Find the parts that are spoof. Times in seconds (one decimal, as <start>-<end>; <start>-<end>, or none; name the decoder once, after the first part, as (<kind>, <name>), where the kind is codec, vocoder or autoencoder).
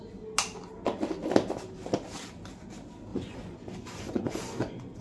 3.1-5.0 (vocoder, Vocos)